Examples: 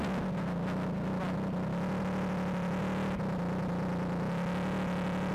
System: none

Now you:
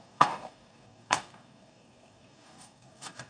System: codec, DAC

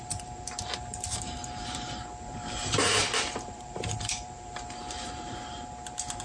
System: vocoder, BigVGAN v2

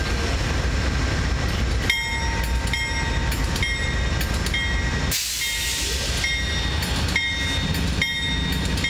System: none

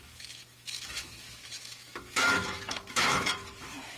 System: autoencoder, DAC-VAE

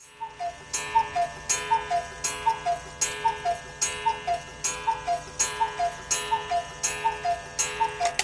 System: none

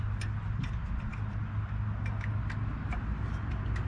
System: none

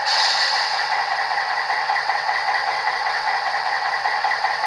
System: vocoder, WaveNeXt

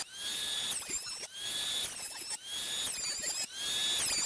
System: none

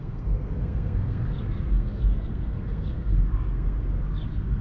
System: codec, SNAC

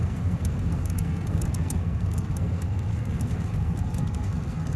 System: codec, SNAC